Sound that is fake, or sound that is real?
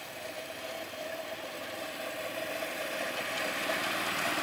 real